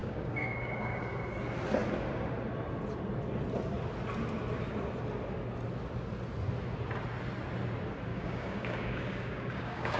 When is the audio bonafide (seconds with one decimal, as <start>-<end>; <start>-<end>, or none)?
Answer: 1.0-8.1